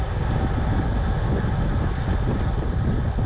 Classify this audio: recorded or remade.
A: recorded